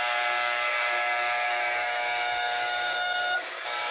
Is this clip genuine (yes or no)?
no